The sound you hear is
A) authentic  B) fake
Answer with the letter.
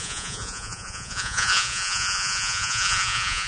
B